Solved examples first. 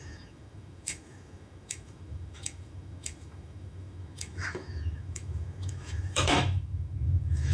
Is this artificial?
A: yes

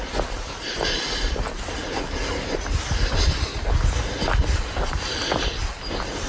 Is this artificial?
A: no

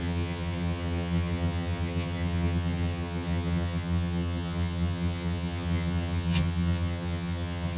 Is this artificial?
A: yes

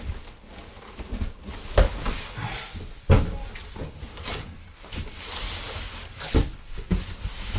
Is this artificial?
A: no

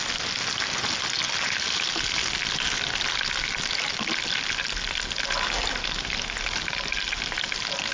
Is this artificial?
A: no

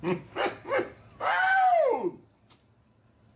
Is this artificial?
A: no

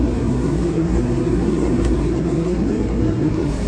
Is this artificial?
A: yes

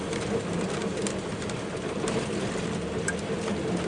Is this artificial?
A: no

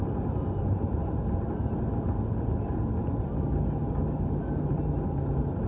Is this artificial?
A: no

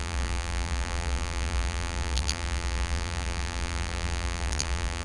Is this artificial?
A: yes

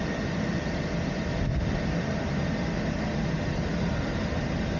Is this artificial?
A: no